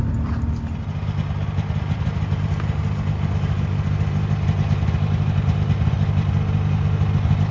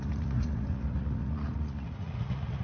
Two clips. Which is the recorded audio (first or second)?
first